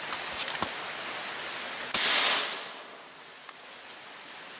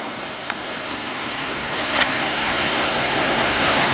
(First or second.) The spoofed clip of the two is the second